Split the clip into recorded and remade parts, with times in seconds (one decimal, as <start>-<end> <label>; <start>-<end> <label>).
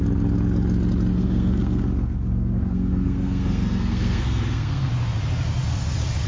0.0-1.1 recorded; 1.1-4.9 remade; 4.9-6.3 recorded